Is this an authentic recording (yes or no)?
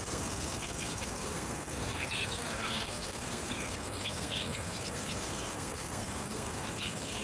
no